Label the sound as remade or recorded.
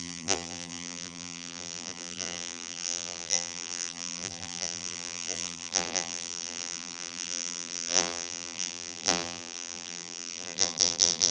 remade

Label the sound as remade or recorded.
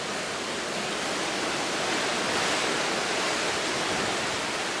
recorded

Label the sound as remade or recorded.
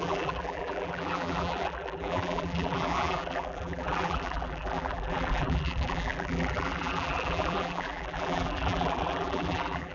remade